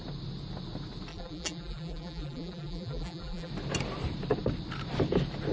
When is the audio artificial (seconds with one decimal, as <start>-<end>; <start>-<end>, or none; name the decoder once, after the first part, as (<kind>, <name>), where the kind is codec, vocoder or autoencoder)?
1.1-3.5 (vocoder, BigVGAN v2)

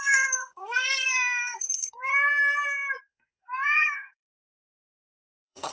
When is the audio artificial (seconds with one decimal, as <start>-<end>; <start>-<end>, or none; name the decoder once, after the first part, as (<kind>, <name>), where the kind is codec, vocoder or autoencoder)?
0.0-2.1 (codec, SNAC); 3.0-5.7

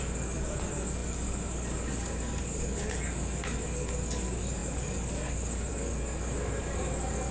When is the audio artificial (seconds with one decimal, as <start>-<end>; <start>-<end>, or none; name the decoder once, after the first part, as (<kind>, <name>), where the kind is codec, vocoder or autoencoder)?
0.0-7.3 (codec, DAC)

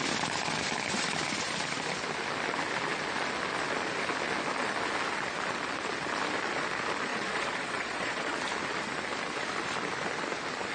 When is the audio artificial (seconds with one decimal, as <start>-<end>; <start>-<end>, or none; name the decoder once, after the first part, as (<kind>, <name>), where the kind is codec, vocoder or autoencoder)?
7.1-8.3 (vocoder, Vocos)

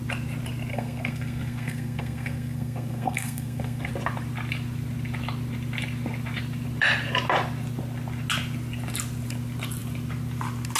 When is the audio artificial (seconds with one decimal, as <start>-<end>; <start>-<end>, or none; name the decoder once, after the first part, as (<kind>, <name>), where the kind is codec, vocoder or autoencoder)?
0.7-3.9 (codec, SNAC)

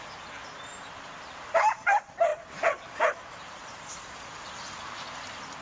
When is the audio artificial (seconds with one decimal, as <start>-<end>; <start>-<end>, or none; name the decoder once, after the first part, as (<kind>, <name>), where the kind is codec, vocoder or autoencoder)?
none

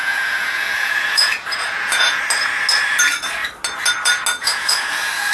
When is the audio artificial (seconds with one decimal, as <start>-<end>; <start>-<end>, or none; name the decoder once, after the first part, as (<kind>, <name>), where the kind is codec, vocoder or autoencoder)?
0.0-2.2 (vocoder, Vocos); 4.4-5.3

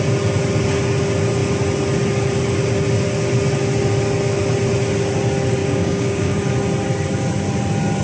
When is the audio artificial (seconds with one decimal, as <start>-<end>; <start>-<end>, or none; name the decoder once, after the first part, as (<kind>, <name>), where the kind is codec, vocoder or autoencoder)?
5.6-6.4 (codec, DAC)